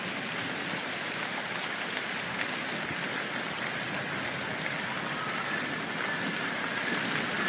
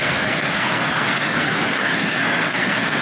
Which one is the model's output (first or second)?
second